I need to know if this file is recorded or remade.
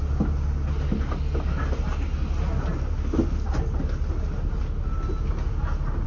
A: recorded